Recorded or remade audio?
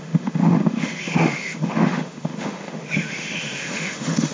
remade